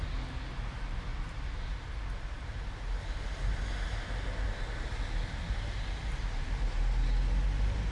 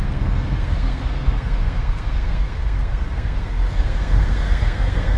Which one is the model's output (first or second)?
second